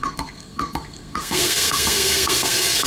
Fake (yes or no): yes